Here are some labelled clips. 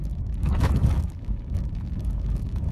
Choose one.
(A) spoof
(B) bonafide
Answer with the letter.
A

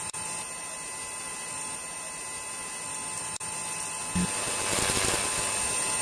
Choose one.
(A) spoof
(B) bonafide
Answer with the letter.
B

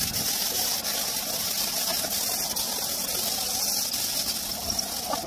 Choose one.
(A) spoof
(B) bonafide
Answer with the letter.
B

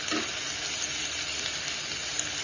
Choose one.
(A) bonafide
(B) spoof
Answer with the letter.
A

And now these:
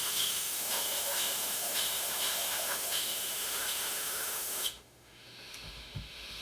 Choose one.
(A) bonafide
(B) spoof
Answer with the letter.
B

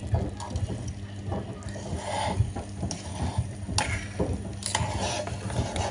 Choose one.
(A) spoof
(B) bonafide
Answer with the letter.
B